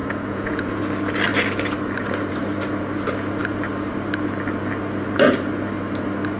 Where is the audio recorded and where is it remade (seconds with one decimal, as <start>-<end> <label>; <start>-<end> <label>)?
0.0-0.8 remade; 0.8-6.4 recorded